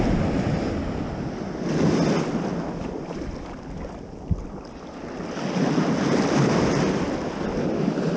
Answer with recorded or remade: recorded